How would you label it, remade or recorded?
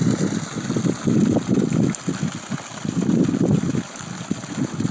recorded